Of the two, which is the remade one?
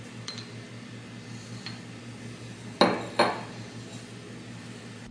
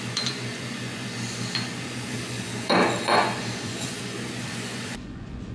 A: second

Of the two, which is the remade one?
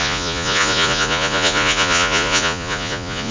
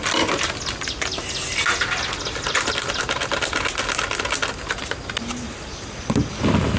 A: first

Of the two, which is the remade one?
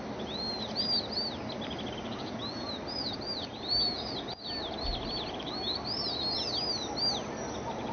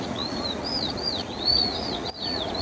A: second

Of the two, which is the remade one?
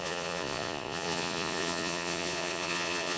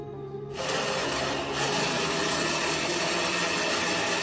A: first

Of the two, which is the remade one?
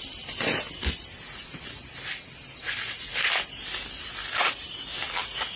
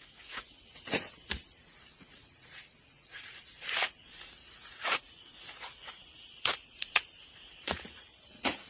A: second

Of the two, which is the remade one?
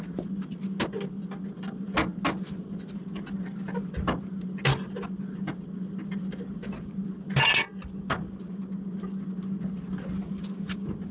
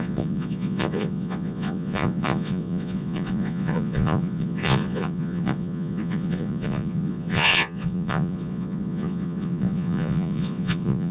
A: second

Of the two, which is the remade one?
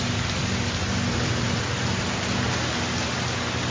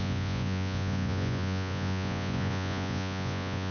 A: second